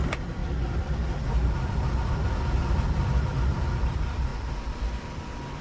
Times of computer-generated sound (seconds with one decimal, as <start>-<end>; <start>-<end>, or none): 0.4-0.9